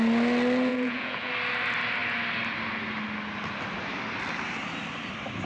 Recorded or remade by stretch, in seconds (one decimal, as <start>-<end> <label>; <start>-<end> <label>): 0.0-0.7 recorded; 0.7-1.3 remade; 1.3-5.5 recorded